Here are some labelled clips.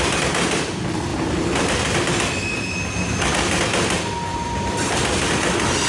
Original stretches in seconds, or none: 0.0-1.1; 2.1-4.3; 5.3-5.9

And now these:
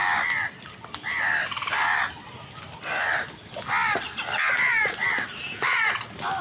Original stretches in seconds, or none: 1.2-3.8; 5.7-6.4

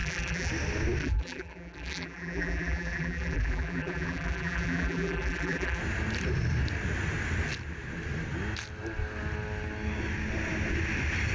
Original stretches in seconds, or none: 0.5-1.0; 5.8-11.3

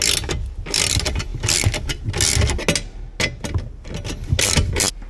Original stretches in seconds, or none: 0.0-5.1

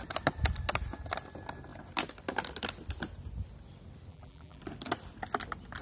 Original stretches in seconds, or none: 0.0-4.1; 4.6-5.8

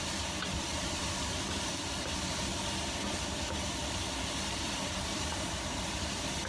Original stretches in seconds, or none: 2.5-4.5

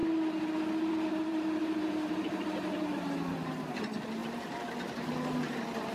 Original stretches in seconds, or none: 0.0-1.3; 3.7-4.2; 5.1-5.9

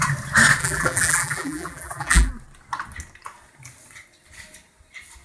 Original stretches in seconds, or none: 0.0-0.6; 2.3-5.2